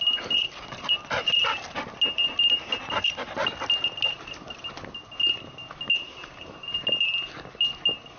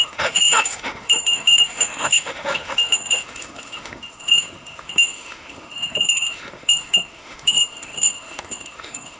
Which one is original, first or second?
first